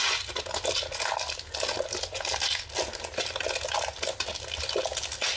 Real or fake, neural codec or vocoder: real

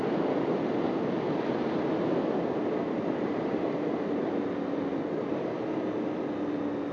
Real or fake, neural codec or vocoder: real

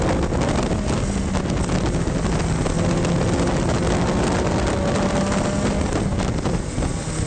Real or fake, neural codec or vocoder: real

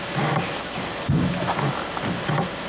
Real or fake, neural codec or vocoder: real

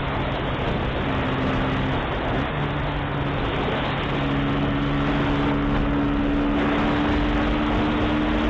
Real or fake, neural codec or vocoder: real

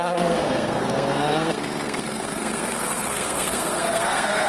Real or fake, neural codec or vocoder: fake, codec, SNAC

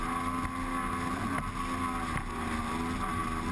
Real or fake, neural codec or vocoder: real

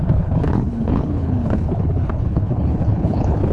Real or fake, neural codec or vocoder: fake, codec, HILCodec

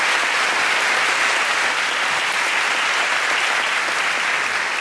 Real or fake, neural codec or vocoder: real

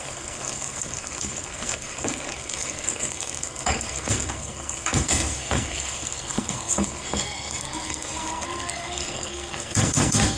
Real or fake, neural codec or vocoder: fake, codec, SNAC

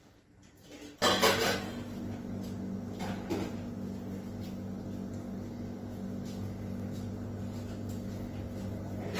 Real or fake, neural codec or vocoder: real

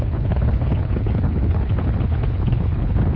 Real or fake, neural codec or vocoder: fake, codec, HILCodec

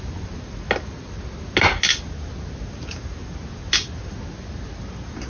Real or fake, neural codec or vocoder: real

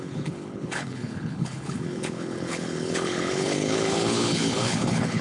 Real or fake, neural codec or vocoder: fake, codec, HILCodec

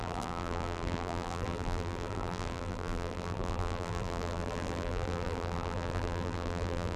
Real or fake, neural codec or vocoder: fake, vocoder, BigVGAN v2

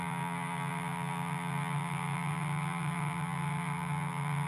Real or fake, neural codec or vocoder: fake, vocoder, BigVGAN v2